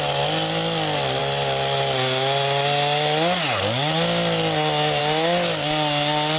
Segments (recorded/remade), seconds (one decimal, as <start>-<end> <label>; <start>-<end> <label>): 0.0-6.4 recorded